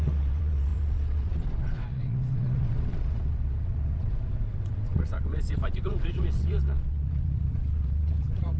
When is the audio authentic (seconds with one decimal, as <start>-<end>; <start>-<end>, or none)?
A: none